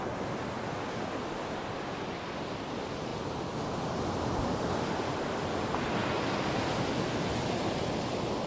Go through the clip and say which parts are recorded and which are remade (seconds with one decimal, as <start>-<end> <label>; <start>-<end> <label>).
0.0-8.5 recorded